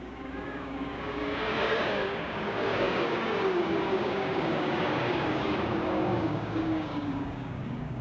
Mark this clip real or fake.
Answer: fake